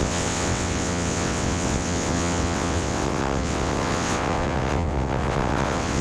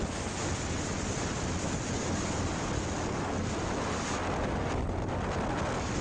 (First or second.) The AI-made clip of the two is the first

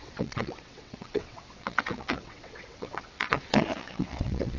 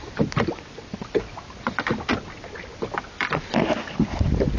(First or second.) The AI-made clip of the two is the first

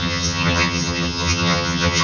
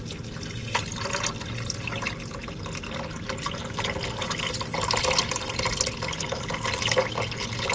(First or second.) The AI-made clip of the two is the first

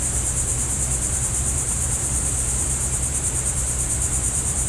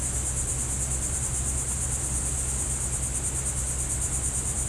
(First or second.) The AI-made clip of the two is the first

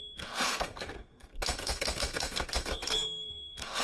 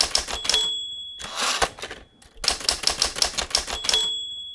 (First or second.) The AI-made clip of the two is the first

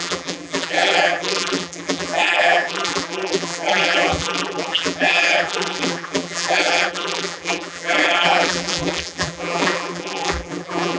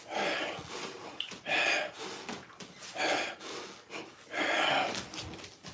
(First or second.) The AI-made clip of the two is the first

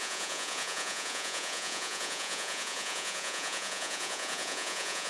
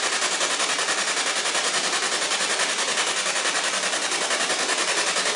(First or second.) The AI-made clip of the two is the first